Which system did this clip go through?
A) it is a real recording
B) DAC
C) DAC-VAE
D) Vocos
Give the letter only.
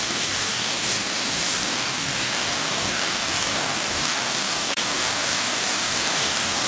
B